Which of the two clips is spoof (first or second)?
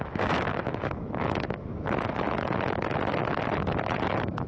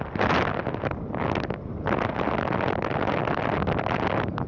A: first